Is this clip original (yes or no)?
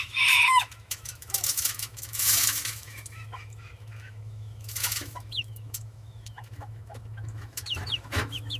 no